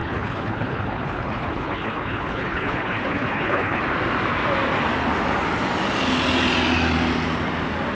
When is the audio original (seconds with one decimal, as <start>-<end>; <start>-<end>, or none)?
3.8-7.9